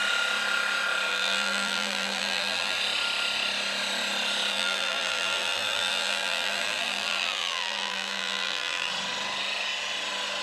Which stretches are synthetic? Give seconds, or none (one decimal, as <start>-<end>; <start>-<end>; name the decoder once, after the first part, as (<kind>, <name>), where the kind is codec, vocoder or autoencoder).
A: 1.1-2.8 (vocoder, BigVGAN v2); 4.5-8.9